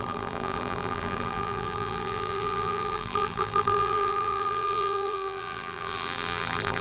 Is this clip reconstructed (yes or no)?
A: yes